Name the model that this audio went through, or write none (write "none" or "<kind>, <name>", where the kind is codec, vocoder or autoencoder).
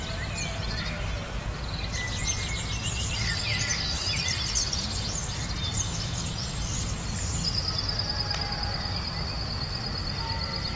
none